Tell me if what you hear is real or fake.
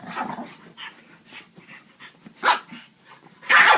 real